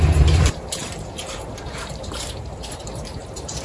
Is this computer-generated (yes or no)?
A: yes